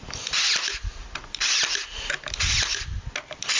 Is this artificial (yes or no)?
no